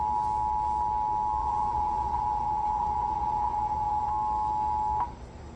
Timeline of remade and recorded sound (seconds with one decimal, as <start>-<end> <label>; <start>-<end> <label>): 0.0-1.4 recorded; 1.4-4.1 remade; 4.1-5.6 recorded